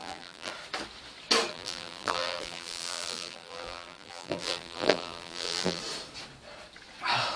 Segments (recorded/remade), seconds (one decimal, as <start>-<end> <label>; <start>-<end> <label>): 0.0-0.5 remade; 0.5-1.5 recorded; 1.5-5.8 remade; 5.8-7.4 recorded